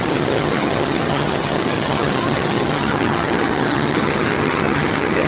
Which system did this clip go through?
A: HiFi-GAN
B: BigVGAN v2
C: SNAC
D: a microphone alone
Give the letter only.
A